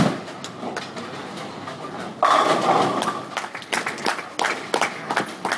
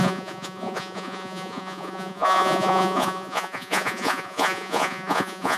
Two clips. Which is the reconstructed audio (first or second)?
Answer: second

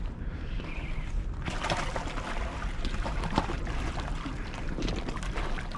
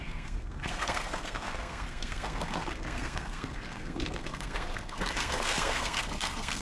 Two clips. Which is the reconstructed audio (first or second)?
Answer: second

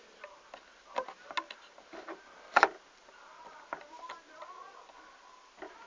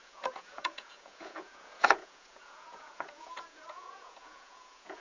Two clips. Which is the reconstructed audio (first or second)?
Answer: second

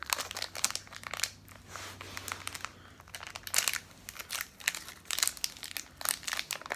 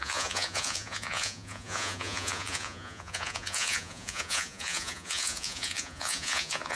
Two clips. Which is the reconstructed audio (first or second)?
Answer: second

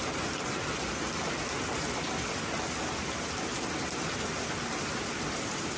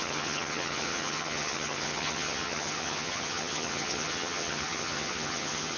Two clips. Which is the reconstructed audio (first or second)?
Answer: second